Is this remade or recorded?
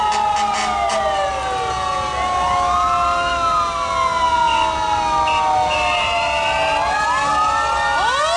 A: recorded